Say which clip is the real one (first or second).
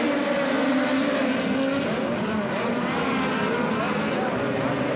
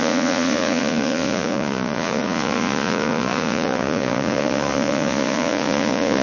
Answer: first